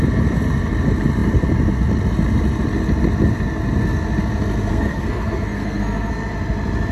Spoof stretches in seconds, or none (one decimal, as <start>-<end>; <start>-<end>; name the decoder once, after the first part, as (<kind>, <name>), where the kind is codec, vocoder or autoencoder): 4.7-6.1 (codec, SNAC)